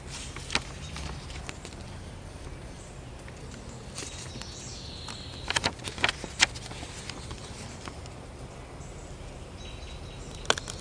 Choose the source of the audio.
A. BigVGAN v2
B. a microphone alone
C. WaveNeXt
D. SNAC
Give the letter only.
B